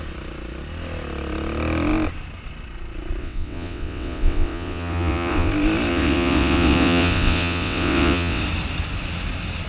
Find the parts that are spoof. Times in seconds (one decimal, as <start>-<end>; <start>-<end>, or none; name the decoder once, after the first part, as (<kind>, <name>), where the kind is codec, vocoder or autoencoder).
3.2-5.5 (vocoder, WaveNeXt); 5.9-8.4